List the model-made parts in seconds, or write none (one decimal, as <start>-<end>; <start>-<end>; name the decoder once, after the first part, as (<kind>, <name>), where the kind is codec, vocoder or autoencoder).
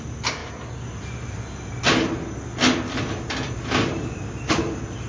none